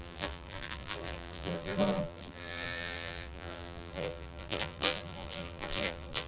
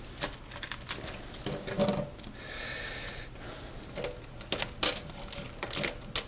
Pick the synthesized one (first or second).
first